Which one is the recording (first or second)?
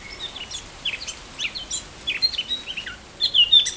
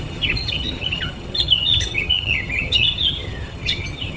first